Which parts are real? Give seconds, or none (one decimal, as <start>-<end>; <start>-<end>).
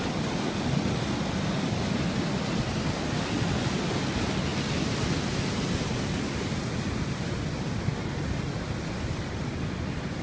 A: 0.0-10.2